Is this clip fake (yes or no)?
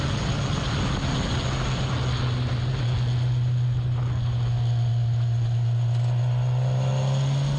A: no